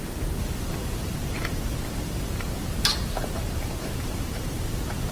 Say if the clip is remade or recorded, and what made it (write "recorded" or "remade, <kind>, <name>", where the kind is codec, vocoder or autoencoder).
remade, vocoder, BigVGAN v2